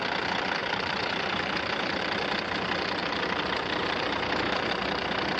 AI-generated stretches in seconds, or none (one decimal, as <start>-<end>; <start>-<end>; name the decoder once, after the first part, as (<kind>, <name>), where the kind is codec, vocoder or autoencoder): 0.6-2.0 (vocoder, BigVGAN v2); 3.0-4.7